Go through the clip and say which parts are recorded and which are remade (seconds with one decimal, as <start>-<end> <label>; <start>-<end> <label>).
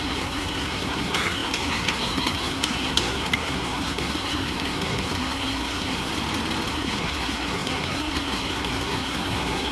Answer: 0.0-6.1 remade; 6.1-6.7 recorded; 6.7-9.7 remade